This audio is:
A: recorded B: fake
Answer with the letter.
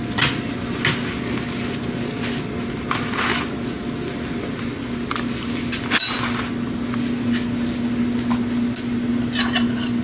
A